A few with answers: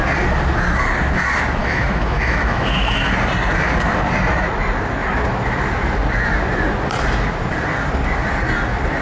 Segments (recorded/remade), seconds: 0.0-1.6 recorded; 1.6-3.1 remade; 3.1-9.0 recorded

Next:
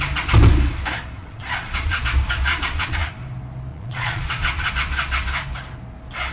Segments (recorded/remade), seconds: 0.0-1.2 recorded; 1.2-2.0 remade; 2.0-2.5 recorded; 2.5-3.1 remade; 3.1-3.7 recorded; 3.7-4.7 remade; 4.7-6.3 recorded

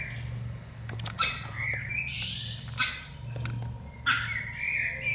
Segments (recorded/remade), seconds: 0.0-5.1 recorded

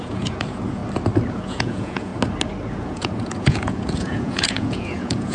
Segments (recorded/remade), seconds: 0.0-0.8 remade; 0.8-1.3 recorded; 1.3-2.1 remade; 2.1-2.7 recorded; 2.7-5.3 remade

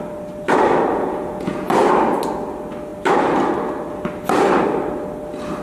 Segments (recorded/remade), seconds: 0.0-0.9 recorded; 0.9-1.7 remade; 1.7-5.6 recorded

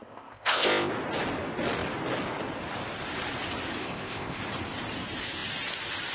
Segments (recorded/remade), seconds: 0.0-0.9 remade; 0.9-3.8 recorded; 3.8-4.4 remade; 4.4-6.1 recorded

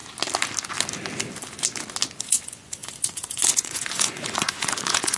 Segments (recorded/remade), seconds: 0.0-2.2 recorded; 2.2-5.2 remade

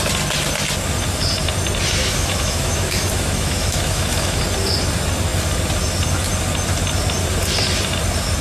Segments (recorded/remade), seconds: 0.0-2.0 recorded; 2.0-4.4 remade; 4.4-8.4 recorded